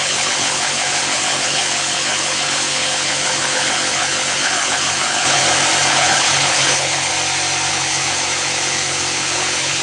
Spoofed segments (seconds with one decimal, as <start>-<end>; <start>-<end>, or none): 0.0-5.4; 5.9-7.1; 7.7-9.8